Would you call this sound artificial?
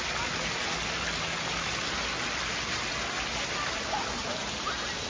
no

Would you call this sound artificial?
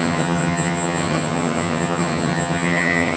yes